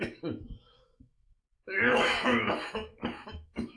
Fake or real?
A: fake